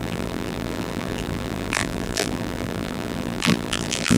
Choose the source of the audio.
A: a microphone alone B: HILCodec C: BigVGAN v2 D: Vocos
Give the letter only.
C